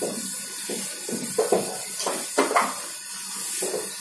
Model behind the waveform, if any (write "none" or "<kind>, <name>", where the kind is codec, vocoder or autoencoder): none